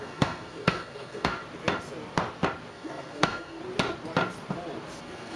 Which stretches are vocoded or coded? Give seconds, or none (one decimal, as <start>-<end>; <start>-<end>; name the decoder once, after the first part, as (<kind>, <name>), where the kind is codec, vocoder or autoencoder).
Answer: 0.0-1.4 (codec, SNAC); 2.7-3.6; 5.0-5.4